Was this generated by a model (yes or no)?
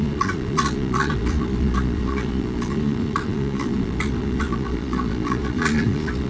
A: yes